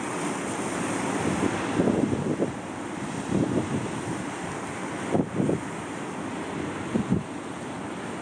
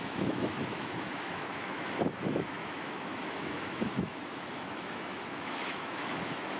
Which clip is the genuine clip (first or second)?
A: first